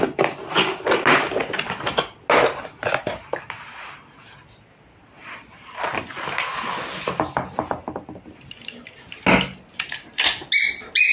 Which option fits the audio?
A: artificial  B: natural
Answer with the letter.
B